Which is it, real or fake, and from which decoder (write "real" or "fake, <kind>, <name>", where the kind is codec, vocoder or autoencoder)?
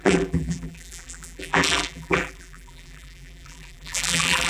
fake, vocoder, BigVGAN v2